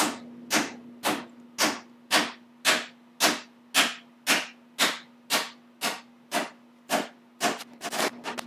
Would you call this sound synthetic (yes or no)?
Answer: no